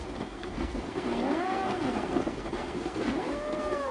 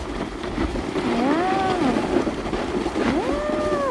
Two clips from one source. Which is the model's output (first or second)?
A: first